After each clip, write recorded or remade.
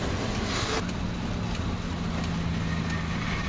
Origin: recorded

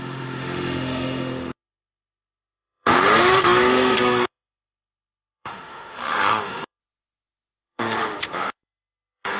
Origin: remade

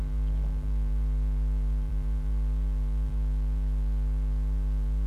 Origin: remade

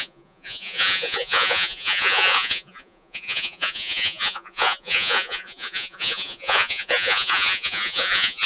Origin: remade